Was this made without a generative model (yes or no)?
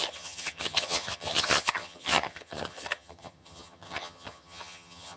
no